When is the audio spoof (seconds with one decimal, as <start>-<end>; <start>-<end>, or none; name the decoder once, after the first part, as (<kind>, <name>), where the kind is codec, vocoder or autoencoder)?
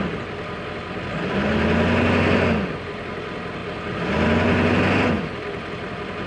none